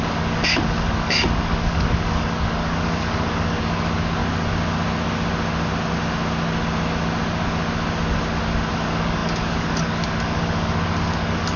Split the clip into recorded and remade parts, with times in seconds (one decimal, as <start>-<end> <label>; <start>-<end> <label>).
0.0-4.2 remade; 4.2-8.7 recorded; 8.7-11.6 remade